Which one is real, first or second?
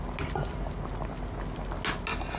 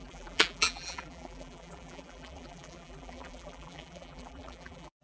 first